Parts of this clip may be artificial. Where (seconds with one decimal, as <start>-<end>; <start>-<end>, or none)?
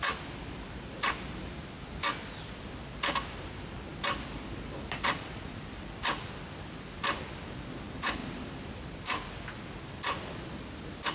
none